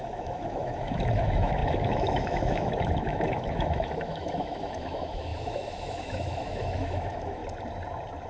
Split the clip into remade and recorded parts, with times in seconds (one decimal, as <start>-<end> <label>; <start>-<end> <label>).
0.0-7.4 remade; 7.4-8.3 recorded